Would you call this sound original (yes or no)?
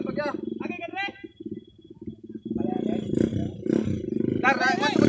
yes